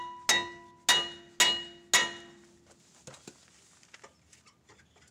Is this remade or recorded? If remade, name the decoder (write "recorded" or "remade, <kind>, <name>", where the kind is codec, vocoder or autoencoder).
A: recorded